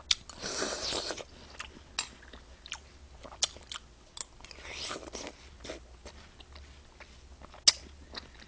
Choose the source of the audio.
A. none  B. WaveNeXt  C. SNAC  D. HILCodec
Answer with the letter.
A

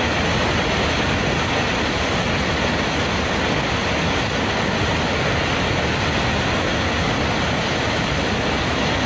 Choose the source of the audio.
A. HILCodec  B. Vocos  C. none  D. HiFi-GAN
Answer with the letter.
C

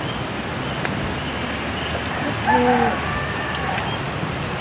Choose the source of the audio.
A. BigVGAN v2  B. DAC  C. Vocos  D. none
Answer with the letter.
D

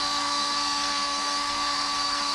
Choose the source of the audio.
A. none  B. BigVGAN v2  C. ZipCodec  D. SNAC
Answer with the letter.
D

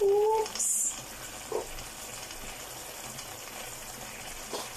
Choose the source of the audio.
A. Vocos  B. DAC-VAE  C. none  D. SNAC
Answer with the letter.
C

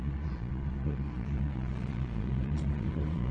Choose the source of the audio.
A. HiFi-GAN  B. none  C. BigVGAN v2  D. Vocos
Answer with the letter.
D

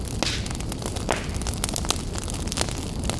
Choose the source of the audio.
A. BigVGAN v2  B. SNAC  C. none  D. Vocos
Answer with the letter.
C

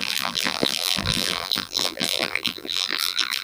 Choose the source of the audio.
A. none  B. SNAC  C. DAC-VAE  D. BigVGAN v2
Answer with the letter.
D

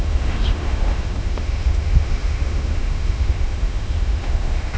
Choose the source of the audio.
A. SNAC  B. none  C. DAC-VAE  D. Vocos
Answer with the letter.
C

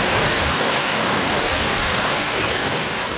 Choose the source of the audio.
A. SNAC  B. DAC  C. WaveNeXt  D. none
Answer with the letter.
B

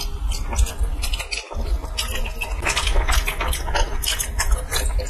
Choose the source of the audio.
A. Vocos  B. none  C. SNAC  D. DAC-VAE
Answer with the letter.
B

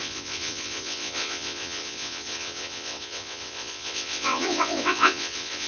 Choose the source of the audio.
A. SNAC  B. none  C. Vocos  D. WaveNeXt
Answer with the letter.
D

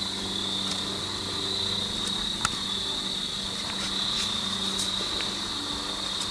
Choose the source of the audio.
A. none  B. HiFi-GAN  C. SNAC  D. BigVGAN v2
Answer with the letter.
A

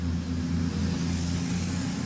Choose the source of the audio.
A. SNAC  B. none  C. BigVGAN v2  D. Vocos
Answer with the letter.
B